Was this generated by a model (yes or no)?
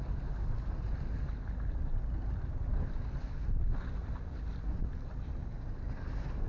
no